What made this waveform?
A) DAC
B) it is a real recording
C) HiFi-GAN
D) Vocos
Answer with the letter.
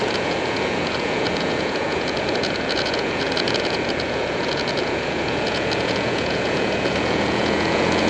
D